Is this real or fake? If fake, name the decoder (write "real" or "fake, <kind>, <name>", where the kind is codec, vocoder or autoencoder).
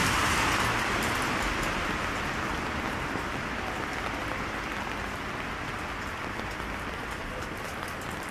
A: real